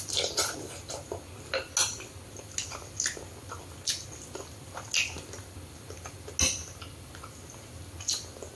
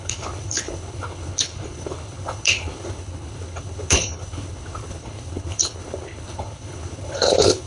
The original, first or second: first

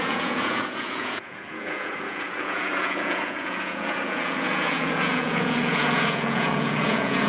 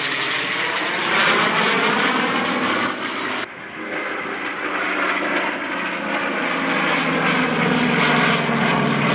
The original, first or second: second